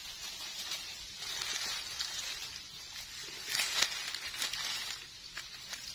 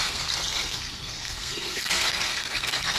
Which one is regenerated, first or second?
second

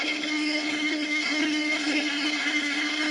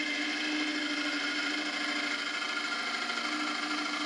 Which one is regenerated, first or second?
first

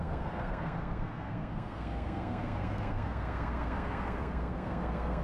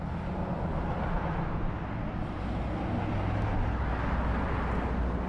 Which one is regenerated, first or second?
first